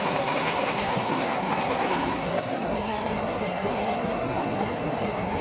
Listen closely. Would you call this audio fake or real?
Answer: fake